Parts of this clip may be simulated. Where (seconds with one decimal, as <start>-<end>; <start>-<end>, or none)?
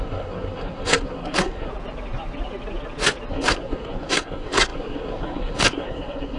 0.0-1.7; 3.3-6.4